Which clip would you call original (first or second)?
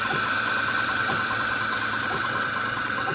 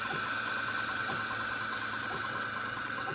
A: second